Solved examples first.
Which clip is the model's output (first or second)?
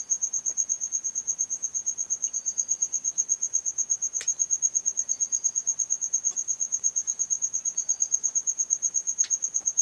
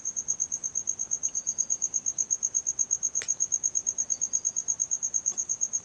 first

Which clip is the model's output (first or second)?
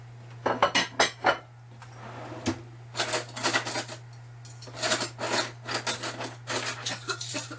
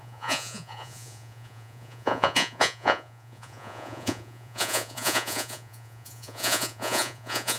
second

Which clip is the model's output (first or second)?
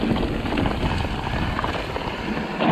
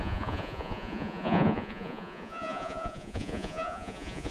second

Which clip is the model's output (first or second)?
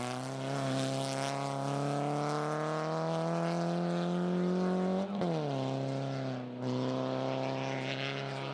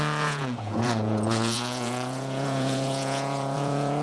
second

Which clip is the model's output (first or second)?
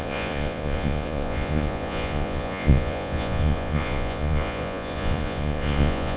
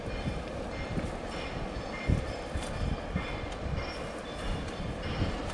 first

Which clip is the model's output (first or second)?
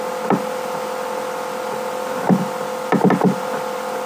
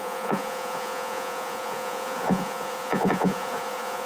second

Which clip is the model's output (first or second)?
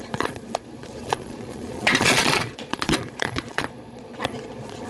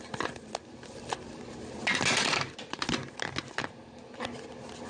first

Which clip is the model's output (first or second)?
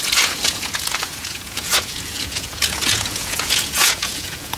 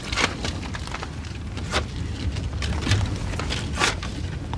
first